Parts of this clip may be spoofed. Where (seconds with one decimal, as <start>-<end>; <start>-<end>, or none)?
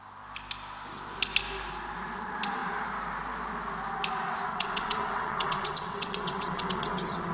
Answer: 4.5-7.3